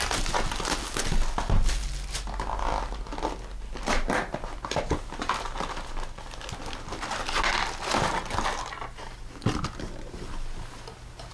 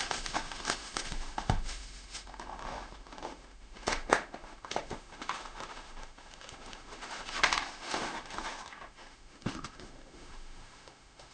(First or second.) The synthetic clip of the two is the second